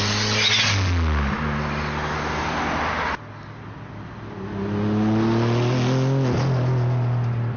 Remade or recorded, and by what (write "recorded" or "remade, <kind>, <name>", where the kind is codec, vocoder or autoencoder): recorded